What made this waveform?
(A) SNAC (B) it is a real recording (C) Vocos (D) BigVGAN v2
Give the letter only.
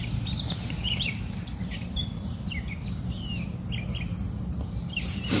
B